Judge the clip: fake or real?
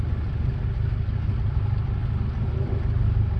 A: real